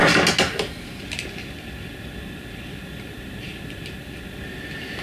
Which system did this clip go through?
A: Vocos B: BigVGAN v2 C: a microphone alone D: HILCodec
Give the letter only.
C